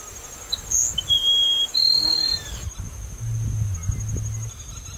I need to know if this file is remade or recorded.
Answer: recorded